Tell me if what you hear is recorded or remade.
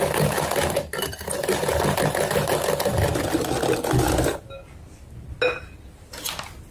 recorded